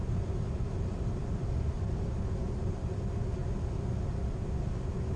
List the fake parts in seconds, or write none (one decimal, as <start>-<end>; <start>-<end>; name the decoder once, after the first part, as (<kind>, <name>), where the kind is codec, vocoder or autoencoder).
none